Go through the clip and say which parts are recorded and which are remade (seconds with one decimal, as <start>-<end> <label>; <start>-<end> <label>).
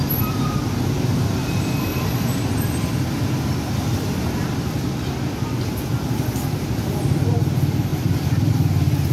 0.0-1.9 recorded; 1.9-2.4 remade; 2.4-9.1 recorded